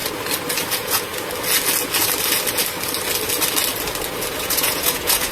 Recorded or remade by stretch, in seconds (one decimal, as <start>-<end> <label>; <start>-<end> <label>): 0.0-0.7 recorded; 0.7-1.1 remade; 1.1-4.3 recorded; 4.3-5.3 remade